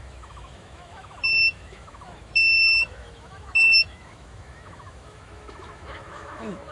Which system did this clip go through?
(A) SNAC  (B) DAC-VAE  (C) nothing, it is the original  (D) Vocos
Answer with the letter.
B